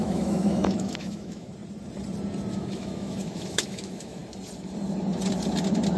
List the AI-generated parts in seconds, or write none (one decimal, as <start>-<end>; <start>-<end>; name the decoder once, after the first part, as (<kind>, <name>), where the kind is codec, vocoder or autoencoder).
0.0-1.5 (autoencoder, DAC-VAE); 2.5-4.2